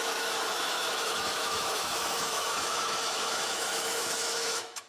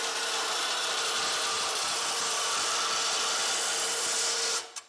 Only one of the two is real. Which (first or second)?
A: second